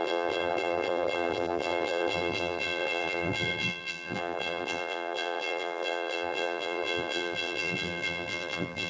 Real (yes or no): no